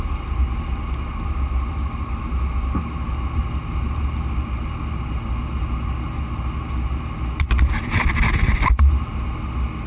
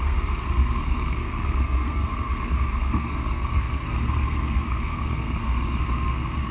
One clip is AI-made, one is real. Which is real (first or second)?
first